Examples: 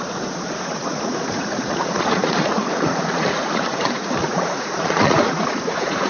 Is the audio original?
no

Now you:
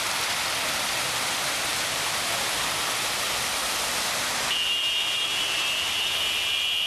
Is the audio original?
no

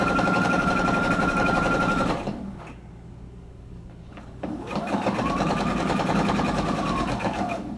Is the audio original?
no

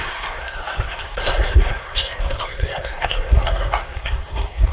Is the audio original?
no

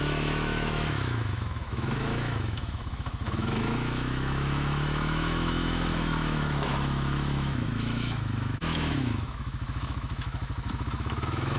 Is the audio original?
no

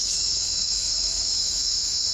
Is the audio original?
no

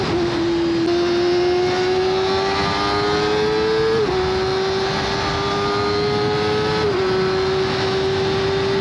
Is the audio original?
yes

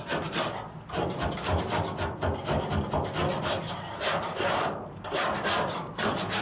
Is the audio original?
yes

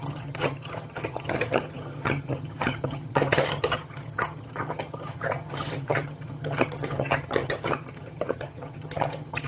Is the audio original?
no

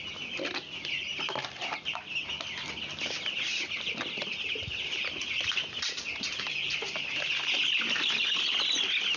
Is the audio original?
yes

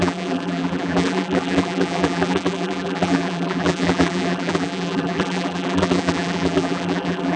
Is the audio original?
no